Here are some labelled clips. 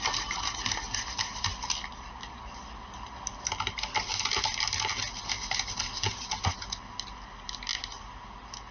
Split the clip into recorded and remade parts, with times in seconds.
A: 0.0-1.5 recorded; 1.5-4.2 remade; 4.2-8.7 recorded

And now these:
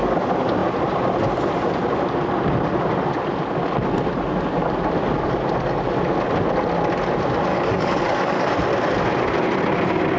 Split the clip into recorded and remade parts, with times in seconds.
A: 0.0-7.5 recorded; 7.5-8.5 remade; 8.5-10.2 recorded

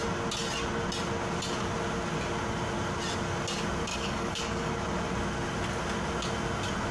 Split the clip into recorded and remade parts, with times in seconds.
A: 0.0-3.9 recorded; 3.9-4.7 remade; 4.7-6.9 recorded

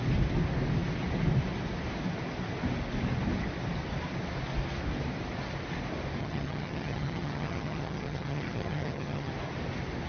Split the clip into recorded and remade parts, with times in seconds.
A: 0.0-6.2 recorded; 6.2-9.3 remade; 9.3-10.1 recorded

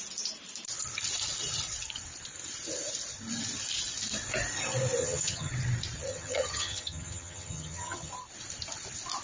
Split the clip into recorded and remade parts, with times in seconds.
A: 0.0-5.0 recorded; 5.0-5.5 remade; 5.5-6.1 recorded; 6.1-8.1 remade; 8.1-9.2 recorded

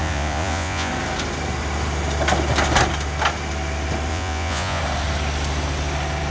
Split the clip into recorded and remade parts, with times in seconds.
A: 0.0-0.9 remade; 0.9-4.1 recorded; 4.1-4.8 remade; 4.8-6.3 recorded